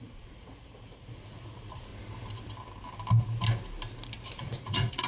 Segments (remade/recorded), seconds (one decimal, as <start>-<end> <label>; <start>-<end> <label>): 0.0-1.9 remade; 1.9-4.4 recorded; 4.4-5.1 remade